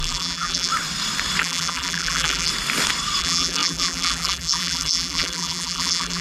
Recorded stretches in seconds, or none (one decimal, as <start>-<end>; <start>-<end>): 0.7-1.4; 2.5-3.2